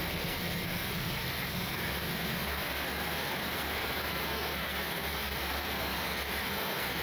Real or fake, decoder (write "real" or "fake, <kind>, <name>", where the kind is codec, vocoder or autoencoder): fake, codec, SNAC